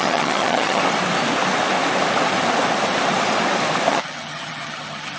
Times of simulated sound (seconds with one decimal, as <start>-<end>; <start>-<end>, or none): 0.0-0.8; 3.9-5.2